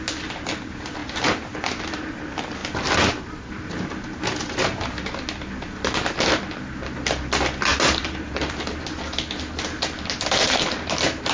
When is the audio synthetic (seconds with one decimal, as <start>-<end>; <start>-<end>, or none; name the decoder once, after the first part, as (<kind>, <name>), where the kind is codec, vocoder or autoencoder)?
1.0-1.8 (vocoder, BigVGAN v2); 7.7-8.6